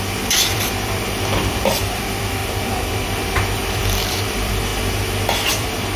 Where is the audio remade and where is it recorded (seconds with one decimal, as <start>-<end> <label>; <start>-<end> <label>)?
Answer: 0.0-2.4 remade; 2.4-3.7 recorded; 3.7-4.7 remade; 4.7-5.5 recorded; 5.5-6.0 remade